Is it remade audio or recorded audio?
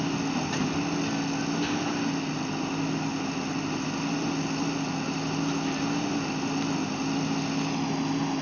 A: recorded